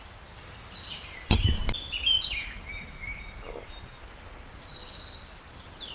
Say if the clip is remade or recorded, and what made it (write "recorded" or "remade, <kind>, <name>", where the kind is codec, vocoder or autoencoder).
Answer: recorded